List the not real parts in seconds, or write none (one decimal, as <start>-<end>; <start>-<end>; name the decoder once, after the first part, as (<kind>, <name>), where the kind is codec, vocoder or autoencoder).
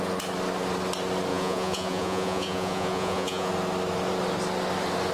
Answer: 1.3-3.5 (vocoder, Vocos)